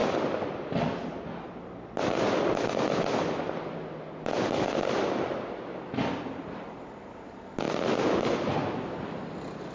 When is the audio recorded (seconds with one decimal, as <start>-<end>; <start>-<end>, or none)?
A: 0.0-9.7